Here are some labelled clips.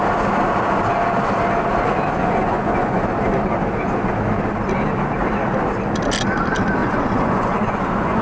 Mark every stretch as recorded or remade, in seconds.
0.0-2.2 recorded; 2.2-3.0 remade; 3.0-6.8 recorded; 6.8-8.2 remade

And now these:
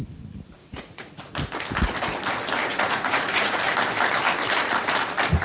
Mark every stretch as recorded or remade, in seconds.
0.0-0.6 recorded; 0.6-1.2 remade; 1.2-2.6 recorded; 2.6-3.6 remade; 3.6-5.4 recorded

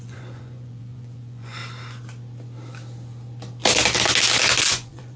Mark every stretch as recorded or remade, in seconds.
0.0-1.6 remade; 1.6-4.7 recorded; 4.7-5.2 remade